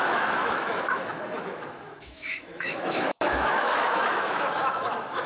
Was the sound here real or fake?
fake